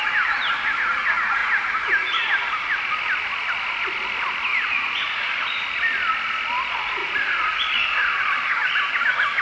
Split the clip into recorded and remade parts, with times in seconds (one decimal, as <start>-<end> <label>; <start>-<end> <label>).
0.0-4.5 recorded; 4.5-5.6 remade; 5.6-7.0 recorded; 7.0-7.6 remade; 7.6-9.4 recorded